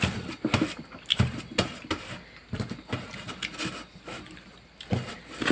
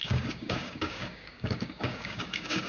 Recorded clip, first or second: first